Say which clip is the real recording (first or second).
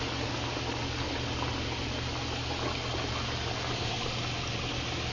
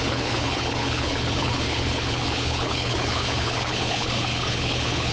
first